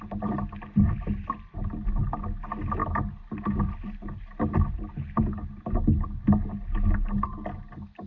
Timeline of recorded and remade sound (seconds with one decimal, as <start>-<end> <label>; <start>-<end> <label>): 0.0-8.1 recorded